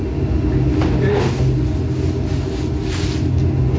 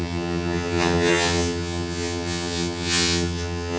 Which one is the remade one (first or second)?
second